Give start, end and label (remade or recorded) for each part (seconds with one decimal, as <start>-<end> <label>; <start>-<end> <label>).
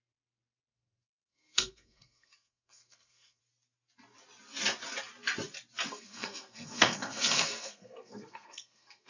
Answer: 0.0-0.7 recorded; 0.7-3.4 remade; 3.4-5.9 recorded; 5.9-9.1 remade